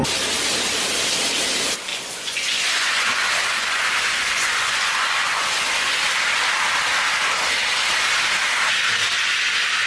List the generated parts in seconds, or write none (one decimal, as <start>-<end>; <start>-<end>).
1.9-6.0